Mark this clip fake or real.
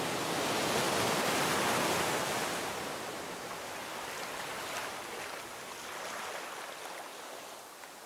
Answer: real